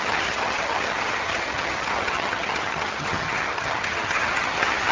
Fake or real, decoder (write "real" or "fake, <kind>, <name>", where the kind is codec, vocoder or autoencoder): fake, vocoder, HiFi-GAN